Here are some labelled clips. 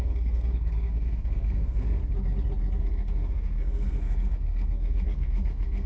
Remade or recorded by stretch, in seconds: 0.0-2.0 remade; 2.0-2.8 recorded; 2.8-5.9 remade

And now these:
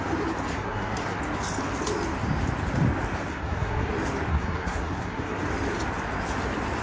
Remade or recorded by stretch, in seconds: 0.0-0.5 recorded; 0.5-1.2 remade; 1.2-3.3 recorded; 3.3-3.9 remade; 3.9-4.3 recorded; 4.3-5.4 remade; 5.4-6.8 recorded

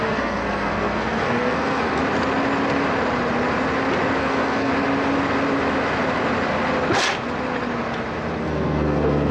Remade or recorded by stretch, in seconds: 0.0-2.0 remade; 2.0-4.2 recorded; 4.2-4.7 remade; 4.7-8.4 recorded; 8.4-9.3 remade

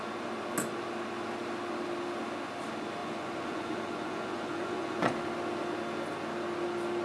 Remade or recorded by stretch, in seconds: 0.0-3.0 recorded; 3.0-5.1 remade; 5.1-7.0 recorded

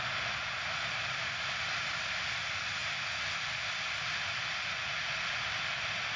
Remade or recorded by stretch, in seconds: 0.0-6.2 recorded

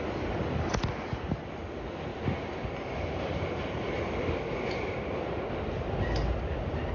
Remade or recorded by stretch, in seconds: 0.0-6.9 recorded

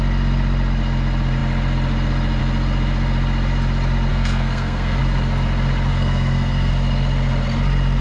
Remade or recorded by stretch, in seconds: 0.0-4.1 recorded; 4.1-5.0 remade; 5.0-5.9 recorded; 5.9-6.7 remade; 6.7-8.0 recorded